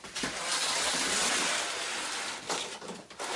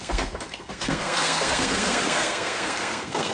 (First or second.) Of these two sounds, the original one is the first